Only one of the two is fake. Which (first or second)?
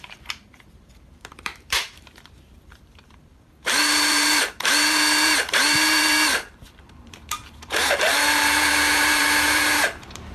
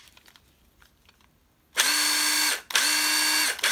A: first